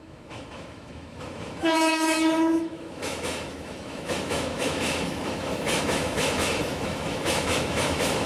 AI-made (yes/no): yes